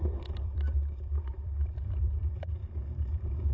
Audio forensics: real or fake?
fake